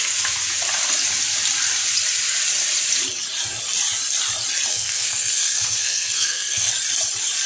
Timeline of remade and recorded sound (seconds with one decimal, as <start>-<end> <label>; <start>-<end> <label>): 0.0-4.7 recorded; 4.7-6.7 remade; 6.7-7.5 recorded